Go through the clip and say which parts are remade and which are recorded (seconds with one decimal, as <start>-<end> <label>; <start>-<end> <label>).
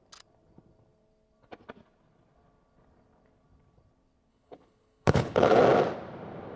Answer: 0.0-4.3 recorded; 4.3-5.6 remade; 5.6-6.6 recorded